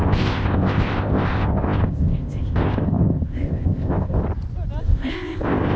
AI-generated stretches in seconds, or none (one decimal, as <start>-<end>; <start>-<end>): 0.0-4.2; 4.8-5.8